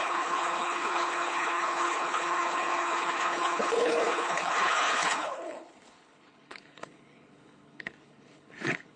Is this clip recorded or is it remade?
remade